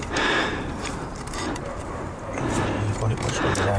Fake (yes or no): yes